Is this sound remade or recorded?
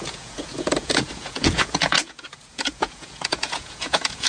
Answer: remade